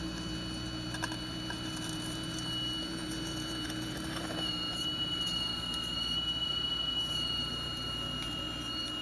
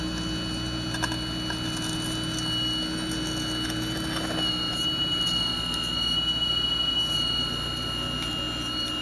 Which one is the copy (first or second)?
first